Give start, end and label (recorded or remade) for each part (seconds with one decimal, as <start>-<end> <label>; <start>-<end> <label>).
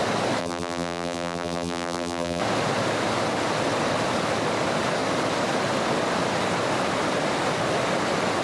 0.0-0.4 recorded; 0.4-2.4 remade; 2.4-8.4 recorded